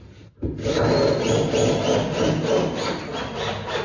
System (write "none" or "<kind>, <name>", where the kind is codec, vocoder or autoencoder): none